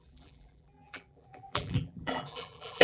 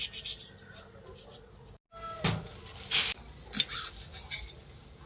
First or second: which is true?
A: second